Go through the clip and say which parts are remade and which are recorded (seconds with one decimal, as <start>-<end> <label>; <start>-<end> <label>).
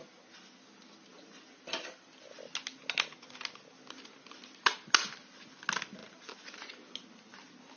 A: 0.0-7.8 recorded